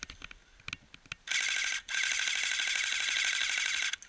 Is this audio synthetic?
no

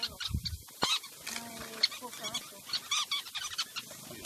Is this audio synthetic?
no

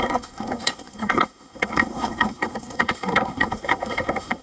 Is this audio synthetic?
yes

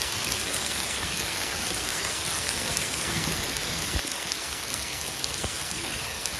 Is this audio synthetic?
yes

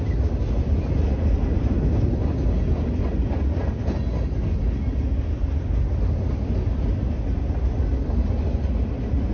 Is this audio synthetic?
no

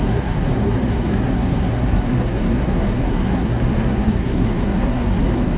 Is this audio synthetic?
yes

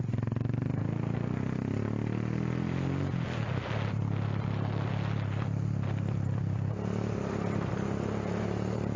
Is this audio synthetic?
no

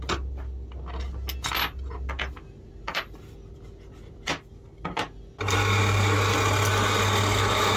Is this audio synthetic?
no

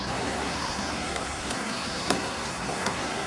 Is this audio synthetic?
yes